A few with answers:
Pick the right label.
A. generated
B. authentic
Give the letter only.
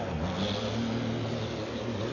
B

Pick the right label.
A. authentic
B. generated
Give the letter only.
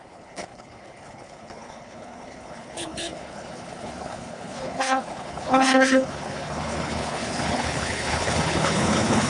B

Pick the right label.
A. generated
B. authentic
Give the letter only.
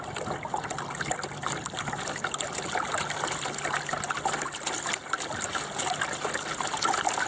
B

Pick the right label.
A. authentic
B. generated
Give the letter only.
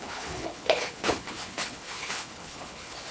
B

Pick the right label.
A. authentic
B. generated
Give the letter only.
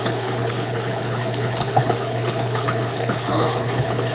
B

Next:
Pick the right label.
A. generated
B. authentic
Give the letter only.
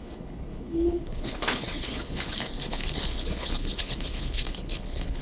A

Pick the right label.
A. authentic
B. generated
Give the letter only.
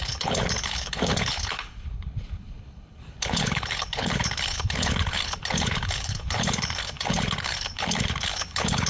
B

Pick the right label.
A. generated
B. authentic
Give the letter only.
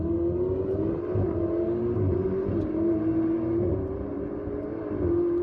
B